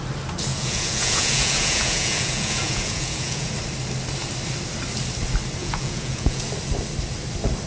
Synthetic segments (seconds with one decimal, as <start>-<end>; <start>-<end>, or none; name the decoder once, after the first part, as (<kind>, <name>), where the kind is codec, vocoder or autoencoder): 0.5-3.5 (vocoder, Vocos); 5.6-6.5